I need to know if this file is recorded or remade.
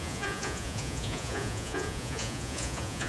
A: remade